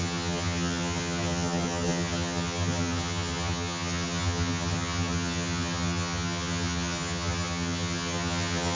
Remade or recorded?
remade